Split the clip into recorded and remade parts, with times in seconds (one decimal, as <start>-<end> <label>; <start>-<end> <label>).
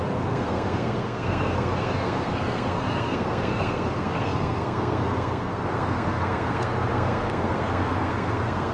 0.0-8.7 remade